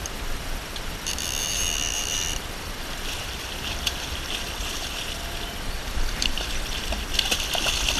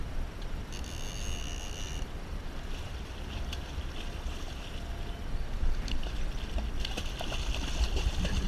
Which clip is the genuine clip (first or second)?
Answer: second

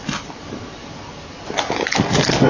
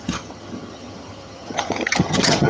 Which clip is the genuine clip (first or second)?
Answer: first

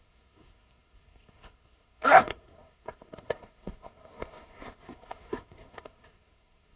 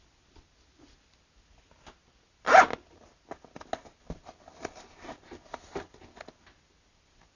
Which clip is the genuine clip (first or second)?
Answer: second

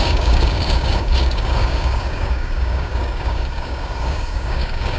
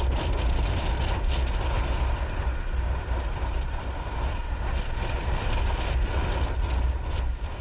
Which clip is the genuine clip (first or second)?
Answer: second